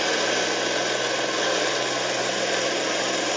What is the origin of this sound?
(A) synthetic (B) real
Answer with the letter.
B